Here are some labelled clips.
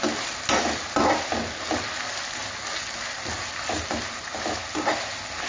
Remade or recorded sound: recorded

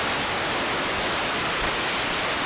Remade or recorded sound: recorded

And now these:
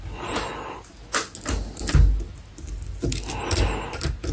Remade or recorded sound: recorded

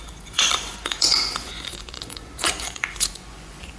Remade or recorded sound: remade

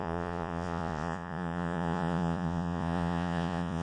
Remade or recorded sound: remade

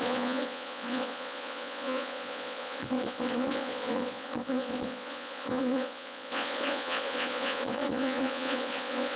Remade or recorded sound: remade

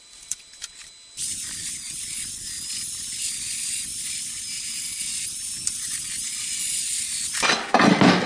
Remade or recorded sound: recorded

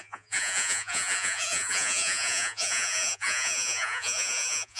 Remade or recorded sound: remade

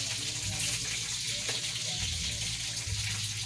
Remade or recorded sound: recorded